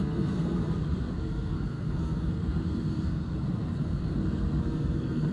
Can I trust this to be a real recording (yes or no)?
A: no